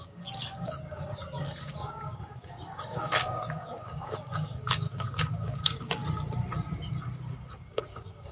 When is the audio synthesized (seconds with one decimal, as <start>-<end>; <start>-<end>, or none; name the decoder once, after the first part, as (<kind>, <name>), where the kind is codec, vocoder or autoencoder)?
0.0-6.0 (codec, DAC); 7.6-8.3